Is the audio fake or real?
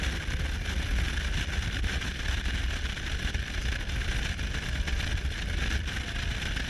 fake